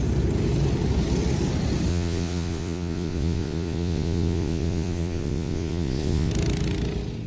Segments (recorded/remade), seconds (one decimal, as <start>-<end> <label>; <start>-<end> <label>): 0.0-1.9 recorded; 1.9-6.3 remade; 6.3-7.3 recorded

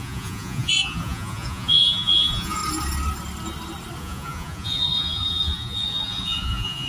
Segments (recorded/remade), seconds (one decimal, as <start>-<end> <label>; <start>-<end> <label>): 0.0-2.6 remade; 2.6-4.0 recorded; 4.0-6.9 remade

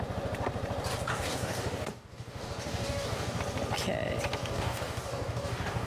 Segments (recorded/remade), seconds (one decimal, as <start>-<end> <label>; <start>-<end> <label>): 0.0-1.1 recorded; 1.1-3.4 remade; 3.4-4.4 recorded; 4.4-5.9 remade

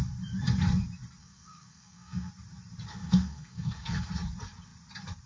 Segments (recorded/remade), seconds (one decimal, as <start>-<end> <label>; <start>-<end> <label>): 0.0-1.2 recorded; 1.2-2.3 remade; 2.3-2.9 recorded; 2.9-4.1 remade; 4.1-5.3 recorded

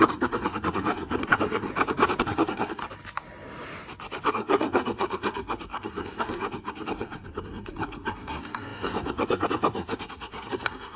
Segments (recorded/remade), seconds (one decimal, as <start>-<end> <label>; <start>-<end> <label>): 0.0-1.7 remade; 1.7-2.2 recorded; 2.2-2.8 remade; 2.8-4.3 recorded; 4.3-11.0 remade

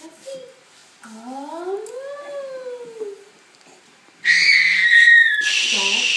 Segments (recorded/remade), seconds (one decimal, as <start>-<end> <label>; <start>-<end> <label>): 0.0-6.2 recorded

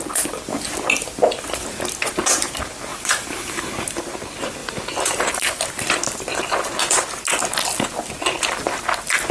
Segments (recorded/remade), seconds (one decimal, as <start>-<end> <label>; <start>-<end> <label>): 0.0-2.9 recorded; 2.9-3.7 remade; 3.7-4.6 recorded; 4.6-5.7 remade; 5.7-9.3 recorded